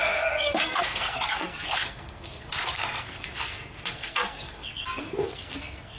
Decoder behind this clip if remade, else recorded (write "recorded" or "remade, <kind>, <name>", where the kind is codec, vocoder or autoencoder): remade, codec, SNAC